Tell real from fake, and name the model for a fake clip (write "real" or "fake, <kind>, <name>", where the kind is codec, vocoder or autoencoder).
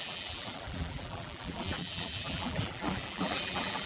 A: fake, vocoder, BigVGAN v2